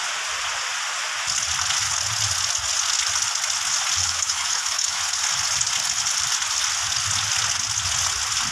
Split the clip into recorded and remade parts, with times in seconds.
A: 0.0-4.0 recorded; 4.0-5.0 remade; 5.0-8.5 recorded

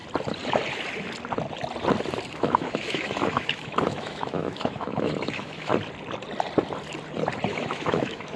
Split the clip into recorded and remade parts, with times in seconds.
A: 0.0-2.3 recorded; 2.3-5.7 remade; 5.7-7.5 recorded; 7.5-8.4 remade

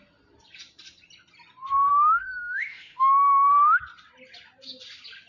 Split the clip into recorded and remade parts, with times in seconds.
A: 0.0-1.9 recorded; 1.9-3.5 remade; 3.5-5.3 recorded

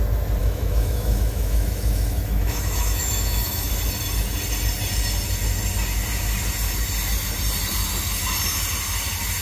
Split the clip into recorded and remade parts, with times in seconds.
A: 0.0-0.4 recorded; 0.4-3.7 remade; 3.7-9.4 recorded